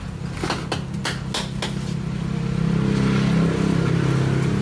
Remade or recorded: recorded